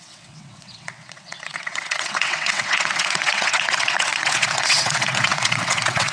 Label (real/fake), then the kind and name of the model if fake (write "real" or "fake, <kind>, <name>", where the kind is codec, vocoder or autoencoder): fake, vocoder, WaveNeXt